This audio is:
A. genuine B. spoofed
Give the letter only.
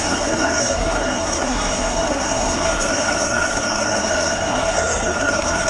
B